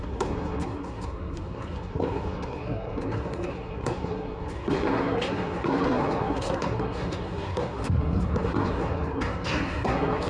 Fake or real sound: fake